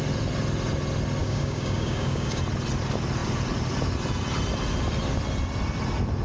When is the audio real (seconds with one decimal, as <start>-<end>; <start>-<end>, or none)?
0.0-1.2; 2.4-6.2